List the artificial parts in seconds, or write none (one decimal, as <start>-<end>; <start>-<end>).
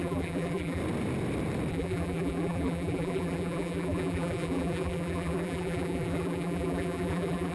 0.0-0.8; 1.7-7.5